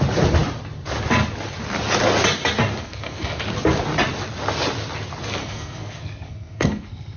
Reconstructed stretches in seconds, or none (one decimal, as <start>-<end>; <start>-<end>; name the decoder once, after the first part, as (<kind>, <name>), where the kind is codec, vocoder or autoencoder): 2.8-3.4 (codec, SNAC); 5.4-7.2